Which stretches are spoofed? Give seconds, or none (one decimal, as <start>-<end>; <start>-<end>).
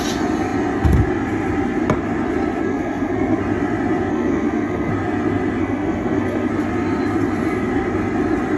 2.6-3.4; 4.1-4.9; 5.6-6.5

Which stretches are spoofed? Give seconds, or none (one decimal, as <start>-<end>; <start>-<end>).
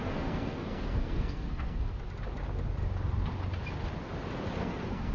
0.0-2.0; 4.6-5.1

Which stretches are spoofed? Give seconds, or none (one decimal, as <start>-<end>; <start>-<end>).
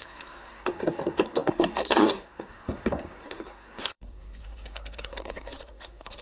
0.0-6.2